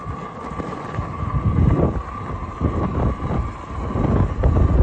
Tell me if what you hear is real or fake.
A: fake